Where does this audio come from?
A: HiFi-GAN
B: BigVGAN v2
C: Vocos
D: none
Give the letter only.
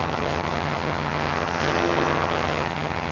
A